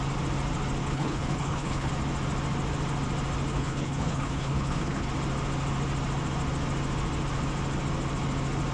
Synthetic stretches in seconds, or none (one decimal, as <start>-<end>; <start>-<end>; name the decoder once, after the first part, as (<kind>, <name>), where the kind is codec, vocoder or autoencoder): 0.8-1.9 (codec, HILCodec); 3.5-5.1